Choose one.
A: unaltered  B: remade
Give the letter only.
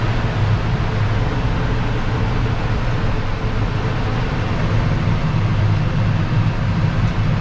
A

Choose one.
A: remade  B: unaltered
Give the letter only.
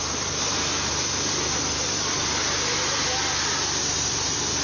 B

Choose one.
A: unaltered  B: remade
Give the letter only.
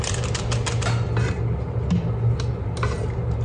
A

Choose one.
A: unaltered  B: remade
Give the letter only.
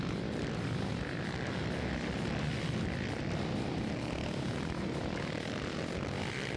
A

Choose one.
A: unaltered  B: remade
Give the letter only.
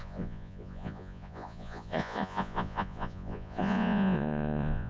B